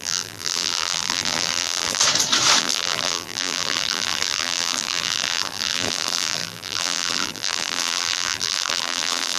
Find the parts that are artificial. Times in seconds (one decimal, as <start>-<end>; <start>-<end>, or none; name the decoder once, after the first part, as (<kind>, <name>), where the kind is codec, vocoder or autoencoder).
0.0-2.0 (vocoder, BigVGAN v2); 2.6-9.4